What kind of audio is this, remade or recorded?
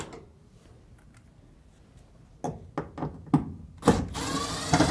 recorded